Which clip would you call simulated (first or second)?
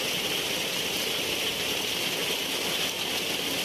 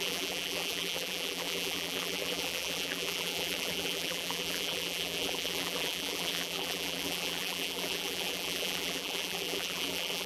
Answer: second